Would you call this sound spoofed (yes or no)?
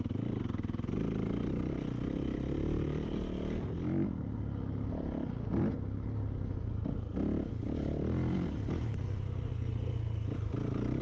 no